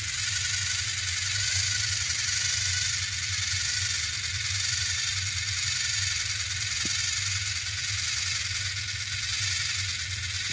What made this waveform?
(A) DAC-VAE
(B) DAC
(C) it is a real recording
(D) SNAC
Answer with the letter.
C